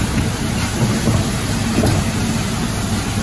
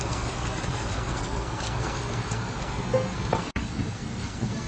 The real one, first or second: first